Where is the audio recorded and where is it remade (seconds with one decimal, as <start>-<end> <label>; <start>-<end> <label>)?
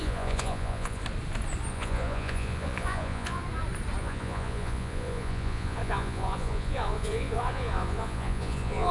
0.0-1.0 remade; 1.0-1.7 recorded; 1.7-3.4 remade; 3.4-4.0 recorded; 4.0-8.9 remade